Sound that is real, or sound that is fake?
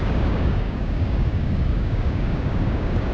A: fake